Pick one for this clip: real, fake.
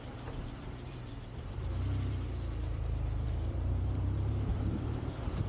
fake